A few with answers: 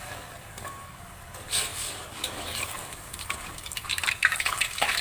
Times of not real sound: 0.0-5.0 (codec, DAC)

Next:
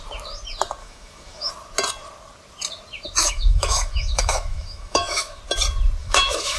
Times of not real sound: 0.8-1.5 (autoencoder, DAC-VAE); 3.2-5.4; 6.0-6.6